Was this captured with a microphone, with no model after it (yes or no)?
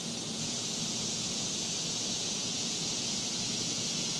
no